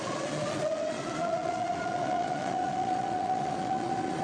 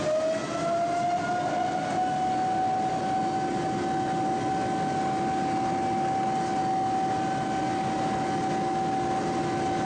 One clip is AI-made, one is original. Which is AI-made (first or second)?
first